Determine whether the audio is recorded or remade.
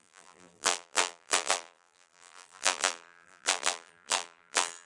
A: remade